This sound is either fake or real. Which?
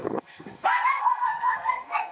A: fake